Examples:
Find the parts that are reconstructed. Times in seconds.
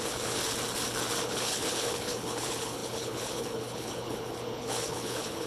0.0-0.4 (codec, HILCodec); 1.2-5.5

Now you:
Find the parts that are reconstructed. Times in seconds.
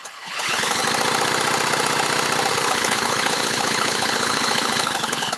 0.0-0.8 (codec, HILCodec); 2.5-5.4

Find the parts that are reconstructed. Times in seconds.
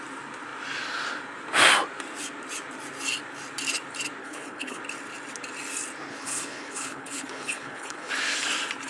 4.2-4.8 (codec, HILCodec); 6.1-8.1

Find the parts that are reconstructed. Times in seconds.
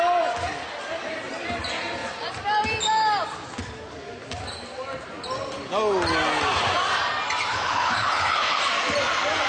7.5-8.6 (codec, HILCodec)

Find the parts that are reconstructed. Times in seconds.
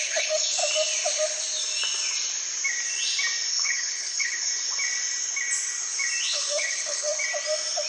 0.0-0.6 (codec, HILCodec); 3.5-4.5; 6.2-7.1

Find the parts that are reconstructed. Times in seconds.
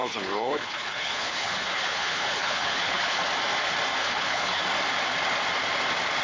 0.0-3.2 (codec, HILCodec); 4.0-4.6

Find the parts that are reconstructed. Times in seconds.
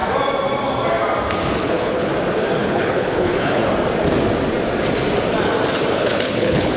1.5-2.1 (codec, HILCodec); 2.6-3.6; 5.9-6.8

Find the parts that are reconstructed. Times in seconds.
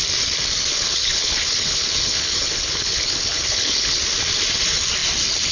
0.7-4.0 (codec, HILCodec)